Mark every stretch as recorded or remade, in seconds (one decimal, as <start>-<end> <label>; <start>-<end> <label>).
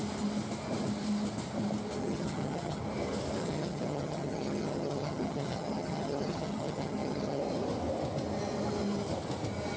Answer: 0.0-2.0 recorded; 2.0-2.8 remade; 2.8-3.4 recorded; 3.4-7.4 remade; 7.4-9.8 recorded